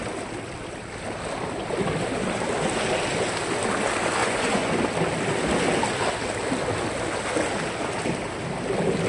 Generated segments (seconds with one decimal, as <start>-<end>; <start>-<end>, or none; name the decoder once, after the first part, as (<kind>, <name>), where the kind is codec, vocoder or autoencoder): 4.2-4.8 (vocoder, Vocos)